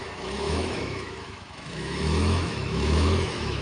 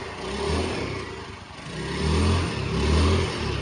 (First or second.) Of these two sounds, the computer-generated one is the first